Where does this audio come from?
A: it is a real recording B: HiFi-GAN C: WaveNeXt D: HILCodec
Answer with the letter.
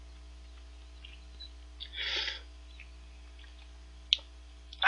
A